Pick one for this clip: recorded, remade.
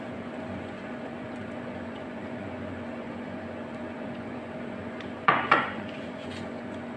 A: remade